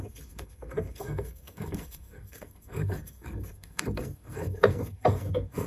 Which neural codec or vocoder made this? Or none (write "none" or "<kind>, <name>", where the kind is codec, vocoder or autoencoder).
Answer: codec, SNAC